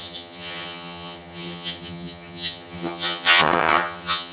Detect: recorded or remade remade